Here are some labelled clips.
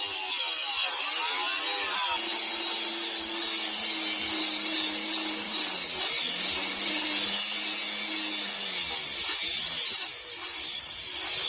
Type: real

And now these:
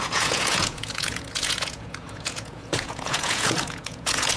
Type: fake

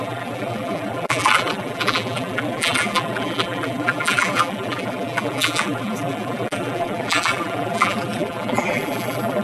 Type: fake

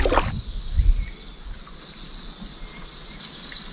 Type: real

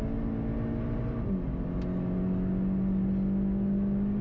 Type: real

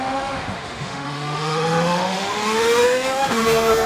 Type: fake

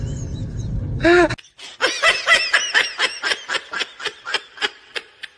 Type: real